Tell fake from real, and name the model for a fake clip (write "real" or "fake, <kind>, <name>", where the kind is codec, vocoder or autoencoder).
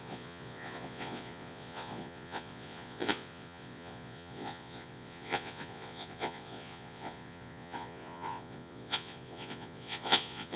fake, vocoder, Vocos